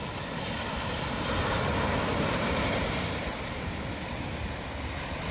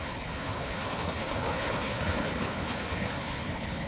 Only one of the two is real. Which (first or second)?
first